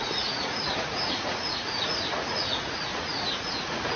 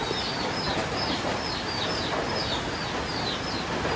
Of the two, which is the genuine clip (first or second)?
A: second